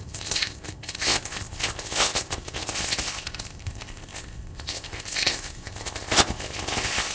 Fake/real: fake